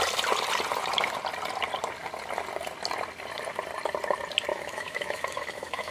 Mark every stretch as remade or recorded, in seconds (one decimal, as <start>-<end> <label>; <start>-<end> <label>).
0.0-4.5 recorded; 4.5-5.9 remade